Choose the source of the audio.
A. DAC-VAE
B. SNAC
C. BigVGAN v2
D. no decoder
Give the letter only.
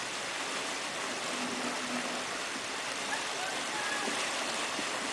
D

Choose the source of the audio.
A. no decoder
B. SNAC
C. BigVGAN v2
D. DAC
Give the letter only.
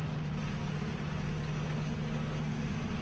A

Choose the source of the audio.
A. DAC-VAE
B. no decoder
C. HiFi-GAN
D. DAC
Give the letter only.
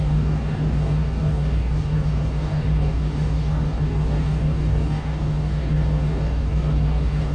D